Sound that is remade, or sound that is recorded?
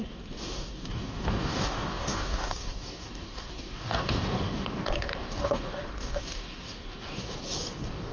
remade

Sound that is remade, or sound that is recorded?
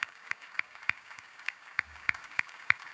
remade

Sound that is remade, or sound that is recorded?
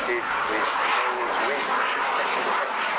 recorded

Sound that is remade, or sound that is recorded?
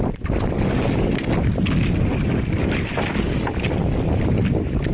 recorded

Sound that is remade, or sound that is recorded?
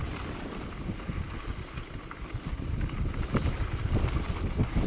recorded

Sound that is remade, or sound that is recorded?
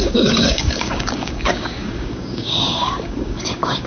remade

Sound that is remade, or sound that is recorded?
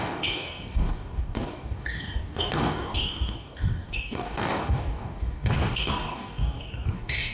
remade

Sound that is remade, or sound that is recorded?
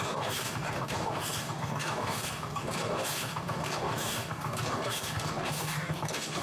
remade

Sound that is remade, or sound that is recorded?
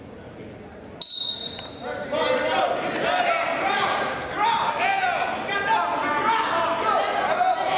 recorded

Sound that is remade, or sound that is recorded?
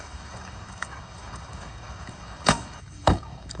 remade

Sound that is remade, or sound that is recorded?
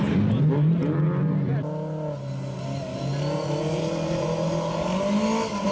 recorded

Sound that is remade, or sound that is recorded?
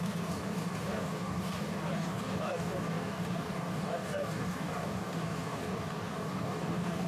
remade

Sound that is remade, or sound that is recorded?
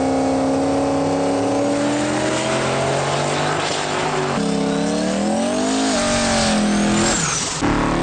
recorded